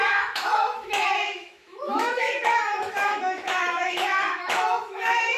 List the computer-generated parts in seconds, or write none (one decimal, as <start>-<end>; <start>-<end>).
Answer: 0.0-5.4